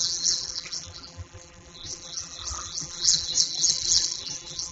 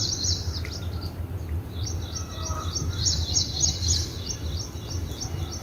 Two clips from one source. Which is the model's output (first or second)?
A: first